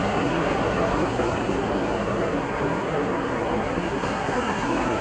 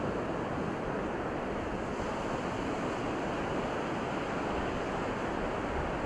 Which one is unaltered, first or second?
second